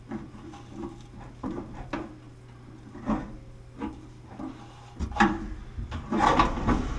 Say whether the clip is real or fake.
real